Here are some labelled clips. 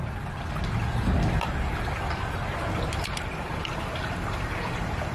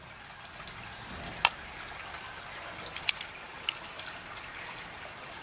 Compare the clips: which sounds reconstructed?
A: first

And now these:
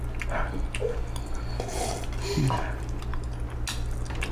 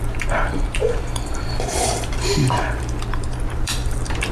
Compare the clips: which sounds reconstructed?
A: second